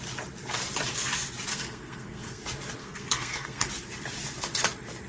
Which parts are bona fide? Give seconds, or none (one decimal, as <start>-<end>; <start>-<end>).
0.0-1.5; 2.4-2.8; 3.7-5.1